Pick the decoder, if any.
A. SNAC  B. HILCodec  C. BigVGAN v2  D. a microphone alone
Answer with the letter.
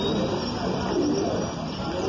D